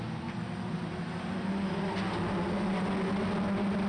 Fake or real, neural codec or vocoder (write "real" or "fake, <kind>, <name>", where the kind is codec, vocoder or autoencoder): real